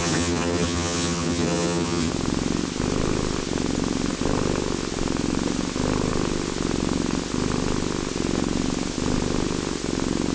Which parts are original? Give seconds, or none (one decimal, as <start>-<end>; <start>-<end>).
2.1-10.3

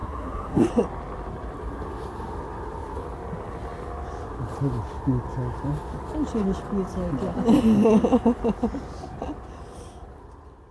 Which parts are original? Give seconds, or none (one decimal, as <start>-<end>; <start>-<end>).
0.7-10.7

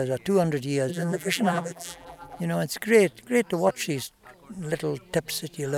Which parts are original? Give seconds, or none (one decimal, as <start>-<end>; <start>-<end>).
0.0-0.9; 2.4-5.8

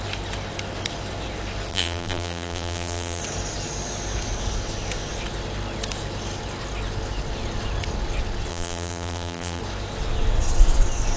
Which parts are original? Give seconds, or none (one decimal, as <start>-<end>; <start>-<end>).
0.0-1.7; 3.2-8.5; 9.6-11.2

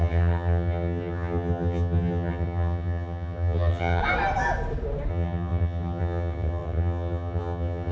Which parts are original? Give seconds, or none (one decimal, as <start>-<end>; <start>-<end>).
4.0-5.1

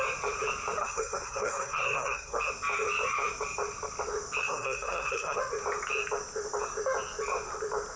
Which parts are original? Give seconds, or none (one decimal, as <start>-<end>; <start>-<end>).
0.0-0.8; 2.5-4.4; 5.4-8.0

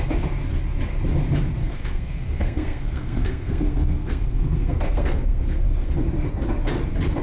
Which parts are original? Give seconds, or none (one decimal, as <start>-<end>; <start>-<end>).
0.0-1.6; 5.9-7.2